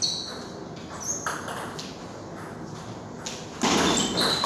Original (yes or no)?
yes